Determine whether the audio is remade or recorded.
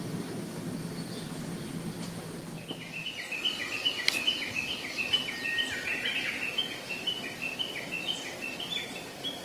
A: recorded